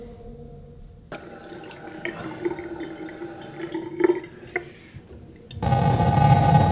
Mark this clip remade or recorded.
recorded